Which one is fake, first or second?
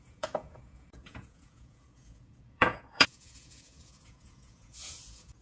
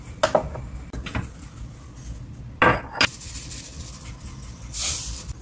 first